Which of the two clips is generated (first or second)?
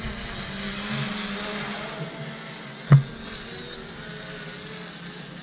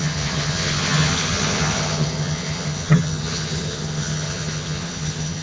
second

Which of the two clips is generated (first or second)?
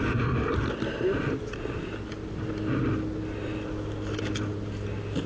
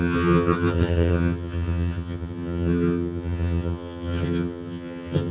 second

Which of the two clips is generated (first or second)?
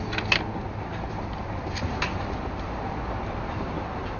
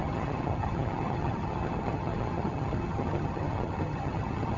second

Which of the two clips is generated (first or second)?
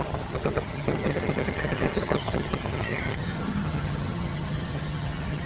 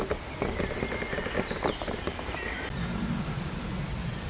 first